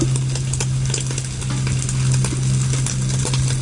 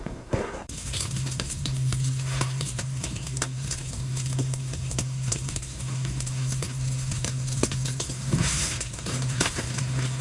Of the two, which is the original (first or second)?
first